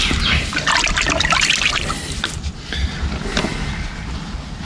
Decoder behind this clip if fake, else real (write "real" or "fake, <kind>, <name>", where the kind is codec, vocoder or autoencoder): real